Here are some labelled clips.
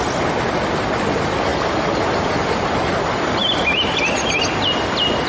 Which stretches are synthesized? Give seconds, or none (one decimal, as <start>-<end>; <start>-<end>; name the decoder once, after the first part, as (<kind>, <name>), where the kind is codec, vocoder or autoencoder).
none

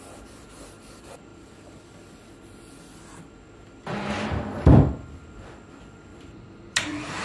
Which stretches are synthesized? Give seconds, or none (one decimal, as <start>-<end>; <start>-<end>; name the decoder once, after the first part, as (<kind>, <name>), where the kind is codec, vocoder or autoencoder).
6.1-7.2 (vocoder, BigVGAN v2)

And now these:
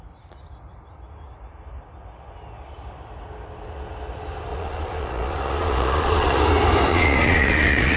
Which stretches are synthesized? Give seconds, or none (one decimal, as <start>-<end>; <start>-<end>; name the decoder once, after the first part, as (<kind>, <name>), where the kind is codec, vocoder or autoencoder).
4.5-6.4 (vocoder, Vocos); 6.9-8.0

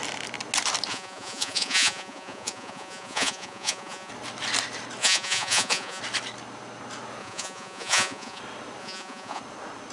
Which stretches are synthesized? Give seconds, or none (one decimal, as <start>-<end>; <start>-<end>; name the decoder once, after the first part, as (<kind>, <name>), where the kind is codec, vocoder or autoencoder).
0.9-4.1 (vocoder, Vocos); 5.0-6.0; 7.2-8.4; 8.8-9.4